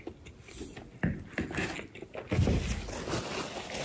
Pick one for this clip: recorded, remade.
recorded